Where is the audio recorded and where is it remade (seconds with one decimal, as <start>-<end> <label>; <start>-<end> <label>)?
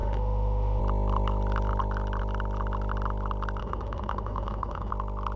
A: 0.0-0.8 remade; 0.8-3.6 recorded; 3.6-4.9 remade; 4.9-5.4 recorded